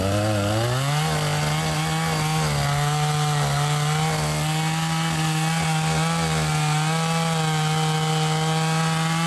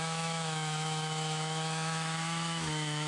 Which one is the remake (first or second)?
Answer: second